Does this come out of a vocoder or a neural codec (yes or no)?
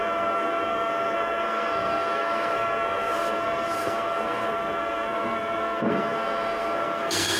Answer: yes